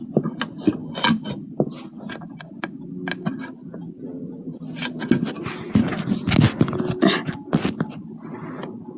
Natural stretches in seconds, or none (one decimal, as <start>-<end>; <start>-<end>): 0.0-0.8; 1.7-9.0